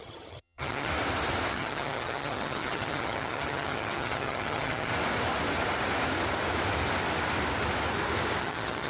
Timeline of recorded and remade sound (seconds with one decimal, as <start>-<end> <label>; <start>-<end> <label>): 0.0-0.9 remade; 0.9-1.5 recorded; 1.5-4.9 remade; 4.9-8.4 recorded; 8.4-8.9 remade